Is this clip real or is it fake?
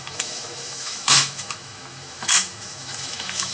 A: fake